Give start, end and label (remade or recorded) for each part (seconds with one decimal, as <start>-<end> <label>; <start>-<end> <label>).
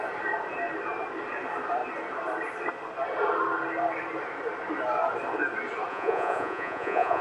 0.0-5.9 recorded; 5.9-7.2 remade